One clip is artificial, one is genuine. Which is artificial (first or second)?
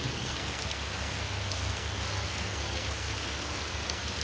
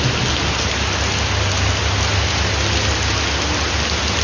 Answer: first